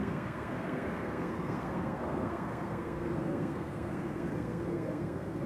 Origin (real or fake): fake